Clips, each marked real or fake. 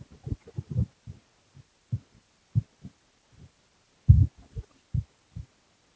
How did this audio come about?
real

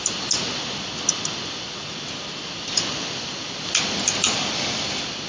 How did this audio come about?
real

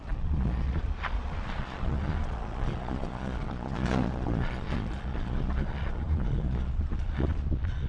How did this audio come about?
fake